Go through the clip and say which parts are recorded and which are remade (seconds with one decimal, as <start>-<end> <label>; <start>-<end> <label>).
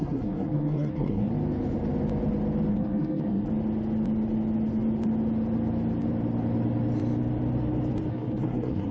0.0-1.3 remade; 1.3-2.7 recorded; 2.7-3.5 remade; 3.5-8.1 recorded; 8.1-8.9 remade